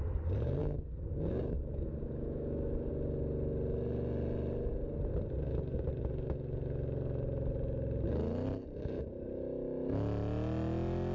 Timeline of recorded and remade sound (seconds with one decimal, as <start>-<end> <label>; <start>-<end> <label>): 0.0-0.6 recorded; 0.6-2.9 remade; 2.9-11.1 recorded